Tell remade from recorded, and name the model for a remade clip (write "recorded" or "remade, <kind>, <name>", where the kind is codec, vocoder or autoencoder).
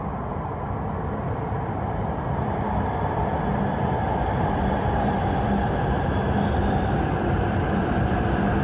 remade, vocoder, BigVGAN v2